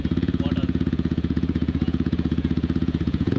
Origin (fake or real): fake